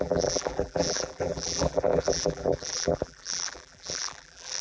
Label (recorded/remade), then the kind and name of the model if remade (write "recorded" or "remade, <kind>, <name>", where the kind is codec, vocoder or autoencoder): remade, vocoder, BigVGAN v2